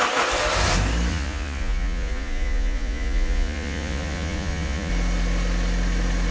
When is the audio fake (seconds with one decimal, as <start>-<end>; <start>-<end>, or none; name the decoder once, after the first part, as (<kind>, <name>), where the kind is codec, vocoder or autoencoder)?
1.1-4.9 (vocoder, Vocos)